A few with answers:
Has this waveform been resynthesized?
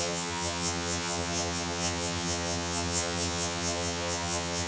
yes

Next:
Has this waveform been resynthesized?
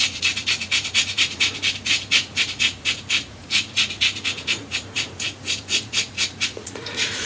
yes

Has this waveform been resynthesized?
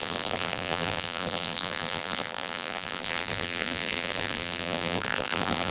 yes